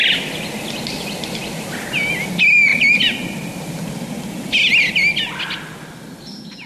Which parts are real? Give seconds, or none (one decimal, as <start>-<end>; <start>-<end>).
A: 0.0-6.7